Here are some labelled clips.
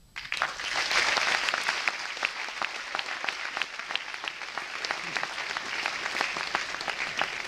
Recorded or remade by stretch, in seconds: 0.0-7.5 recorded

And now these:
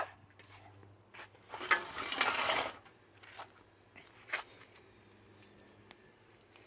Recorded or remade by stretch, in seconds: 0.0-6.7 recorded

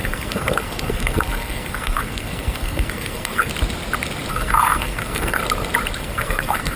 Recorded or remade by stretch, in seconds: 0.0-3.5 remade; 3.5-4.3 recorded; 4.3-5.4 remade; 5.4-6.0 recorded; 6.0-6.8 remade

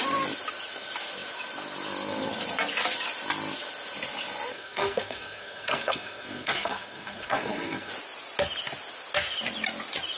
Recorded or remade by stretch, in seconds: 0.0-4.5 recorded; 4.5-7.9 remade; 7.9-10.2 recorded

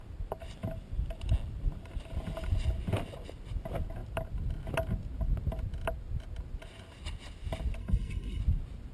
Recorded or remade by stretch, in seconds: 0.0-7.8 recorded; 7.8-8.4 remade; 8.4-8.9 recorded

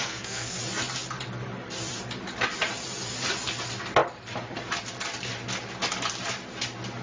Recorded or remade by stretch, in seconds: 0.0-0.6 remade; 0.6-7.0 recorded